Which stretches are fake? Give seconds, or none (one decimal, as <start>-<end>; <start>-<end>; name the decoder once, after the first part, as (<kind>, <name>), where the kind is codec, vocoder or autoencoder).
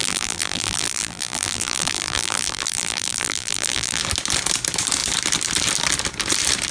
0.0-4.0 (vocoder, BigVGAN v2)